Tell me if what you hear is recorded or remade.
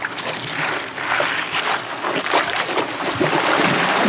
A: recorded